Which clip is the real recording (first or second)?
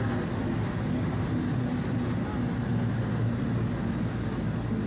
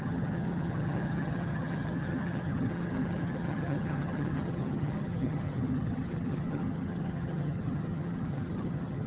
first